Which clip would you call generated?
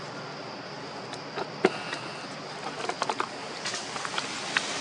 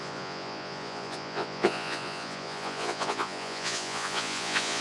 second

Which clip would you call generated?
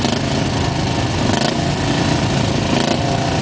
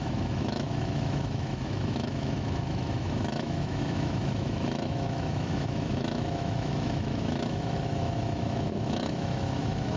second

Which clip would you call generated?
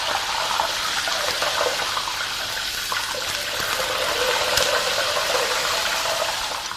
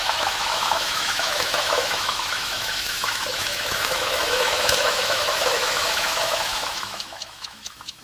second